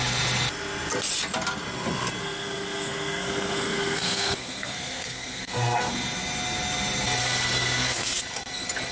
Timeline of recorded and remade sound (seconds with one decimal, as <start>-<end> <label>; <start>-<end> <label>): 0.0-2.2 recorded; 2.2-5.9 remade; 5.9-7.2 recorded; 7.2-8.2 remade; 8.2-8.9 recorded